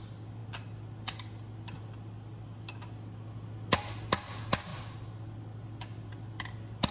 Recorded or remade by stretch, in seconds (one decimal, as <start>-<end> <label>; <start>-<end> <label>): 0.0-6.9 recorded